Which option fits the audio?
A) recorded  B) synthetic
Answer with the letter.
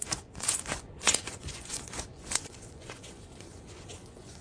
B